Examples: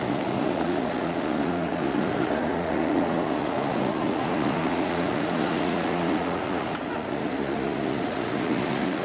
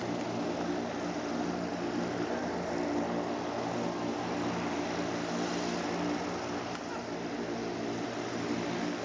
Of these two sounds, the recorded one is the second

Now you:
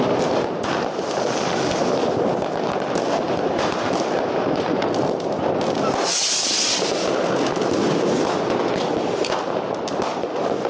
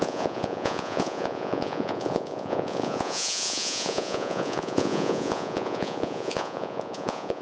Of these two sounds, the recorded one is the first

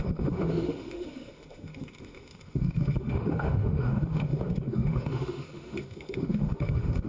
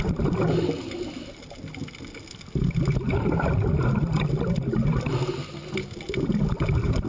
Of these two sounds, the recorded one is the second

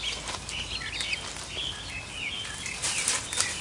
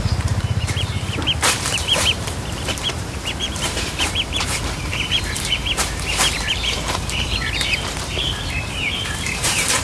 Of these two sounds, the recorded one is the first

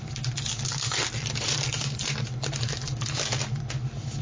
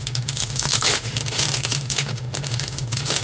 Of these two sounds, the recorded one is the first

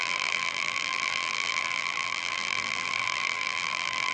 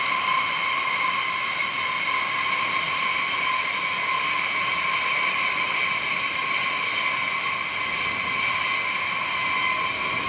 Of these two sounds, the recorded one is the second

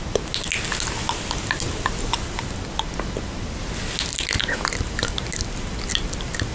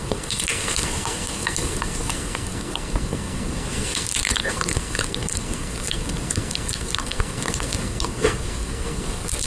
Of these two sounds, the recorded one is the first